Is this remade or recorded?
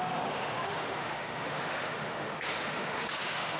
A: remade